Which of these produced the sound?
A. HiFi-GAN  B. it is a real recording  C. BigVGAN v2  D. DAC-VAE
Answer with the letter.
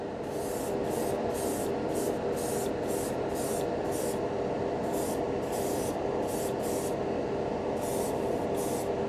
B